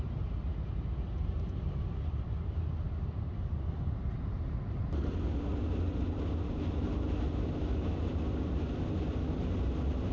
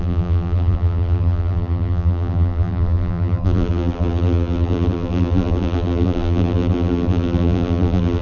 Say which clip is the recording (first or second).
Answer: first